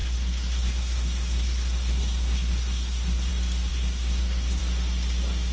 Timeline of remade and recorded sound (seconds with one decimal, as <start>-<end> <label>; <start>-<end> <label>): 0.0-3.3 remade; 3.3-3.7 recorded; 3.7-4.6 remade; 4.6-5.5 recorded